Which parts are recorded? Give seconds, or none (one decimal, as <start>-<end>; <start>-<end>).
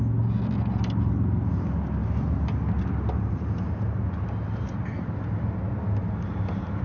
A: 0.0-6.8